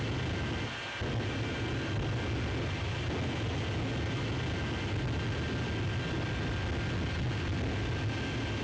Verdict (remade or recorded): recorded